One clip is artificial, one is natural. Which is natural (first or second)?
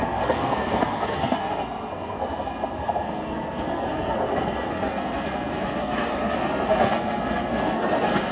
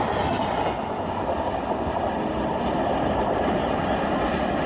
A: second